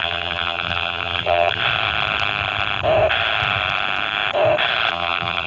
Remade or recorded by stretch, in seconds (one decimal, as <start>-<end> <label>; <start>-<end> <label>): 0.0-1.6 remade; 1.6-4.9 recorded; 4.9-5.5 remade